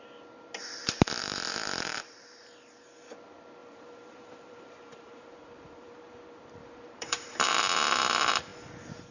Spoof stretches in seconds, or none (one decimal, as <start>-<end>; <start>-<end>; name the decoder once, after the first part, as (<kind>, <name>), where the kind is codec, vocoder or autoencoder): 1.2-2.5 (vocoder, BigVGAN v2); 3.6-6.1; 6.6-7.5